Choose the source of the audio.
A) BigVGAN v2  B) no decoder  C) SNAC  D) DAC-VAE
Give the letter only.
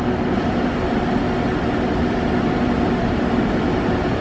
B